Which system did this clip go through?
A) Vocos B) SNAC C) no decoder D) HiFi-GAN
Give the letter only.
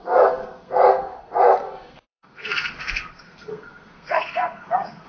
B